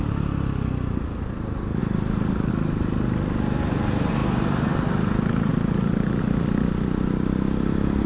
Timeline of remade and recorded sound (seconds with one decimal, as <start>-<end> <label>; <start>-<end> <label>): 0.0-8.1 recorded